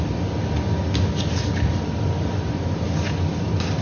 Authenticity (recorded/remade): recorded